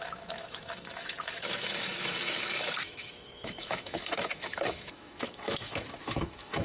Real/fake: fake